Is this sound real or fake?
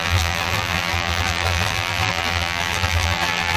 fake